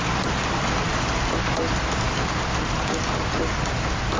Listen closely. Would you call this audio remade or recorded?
recorded